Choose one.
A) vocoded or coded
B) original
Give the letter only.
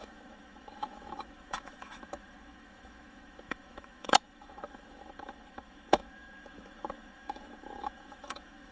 A